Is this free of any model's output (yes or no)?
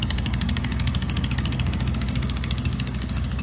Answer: no